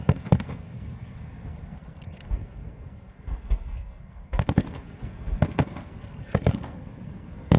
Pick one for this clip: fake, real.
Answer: fake